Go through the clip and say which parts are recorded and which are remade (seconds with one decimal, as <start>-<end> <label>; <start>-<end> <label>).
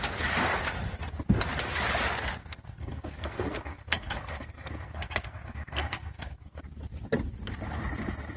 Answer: 0.0-2.4 recorded; 2.4-6.6 remade; 6.6-8.4 recorded